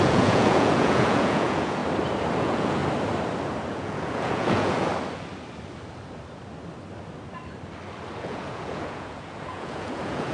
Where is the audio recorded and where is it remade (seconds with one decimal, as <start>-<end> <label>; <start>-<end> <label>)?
0.0-1.8 remade; 1.8-2.4 recorded; 2.4-2.8 remade; 2.8-3.7 recorded; 3.7-4.9 remade; 4.9-8.2 recorded; 8.2-10.3 remade